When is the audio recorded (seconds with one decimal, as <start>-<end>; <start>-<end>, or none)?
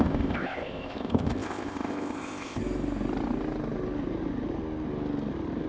2.6-5.7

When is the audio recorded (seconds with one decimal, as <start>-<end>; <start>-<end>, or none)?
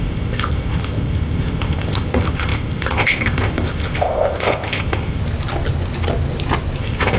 5.2-6.8